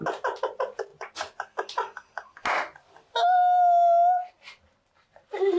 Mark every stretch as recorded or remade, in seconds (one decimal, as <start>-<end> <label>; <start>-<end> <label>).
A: 0.0-0.9 remade; 0.9-4.3 recorded; 4.3-5.6 remade